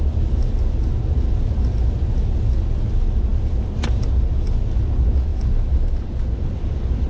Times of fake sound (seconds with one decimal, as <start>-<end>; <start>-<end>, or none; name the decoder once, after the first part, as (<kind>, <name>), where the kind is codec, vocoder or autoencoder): none